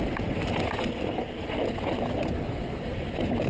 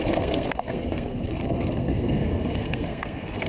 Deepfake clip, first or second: second